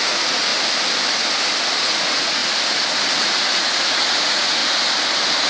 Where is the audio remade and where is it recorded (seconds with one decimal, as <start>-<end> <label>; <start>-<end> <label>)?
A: 0.0-0.5 remade; 0.5-1.8 recorded; 1.8-2.4 remade; 2.4-3.1 recorded; 3.1-4.6 remade; 4.6-5.5 recorded